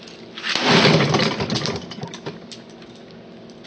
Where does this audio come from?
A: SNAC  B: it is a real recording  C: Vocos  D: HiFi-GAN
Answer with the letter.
B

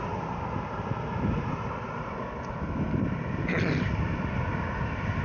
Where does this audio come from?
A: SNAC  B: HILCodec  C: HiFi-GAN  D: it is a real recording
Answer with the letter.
D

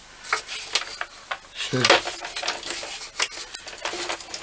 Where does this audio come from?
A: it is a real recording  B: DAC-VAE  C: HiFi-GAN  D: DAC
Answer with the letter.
A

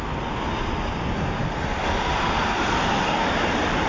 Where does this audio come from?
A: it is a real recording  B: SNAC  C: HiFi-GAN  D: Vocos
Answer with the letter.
A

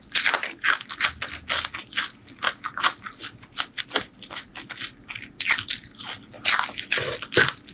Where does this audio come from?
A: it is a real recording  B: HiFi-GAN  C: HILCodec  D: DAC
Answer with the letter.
A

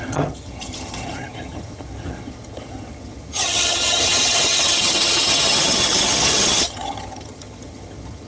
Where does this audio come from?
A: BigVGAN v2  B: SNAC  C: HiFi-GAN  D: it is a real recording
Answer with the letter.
C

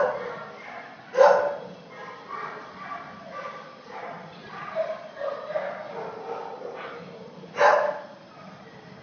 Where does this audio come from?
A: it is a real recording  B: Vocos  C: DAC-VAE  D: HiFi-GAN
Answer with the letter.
A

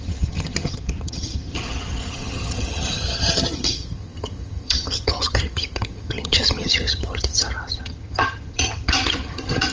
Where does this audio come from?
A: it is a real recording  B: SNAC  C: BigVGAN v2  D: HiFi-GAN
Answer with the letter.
D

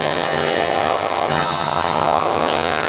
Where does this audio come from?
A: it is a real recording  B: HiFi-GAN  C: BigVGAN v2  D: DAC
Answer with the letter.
B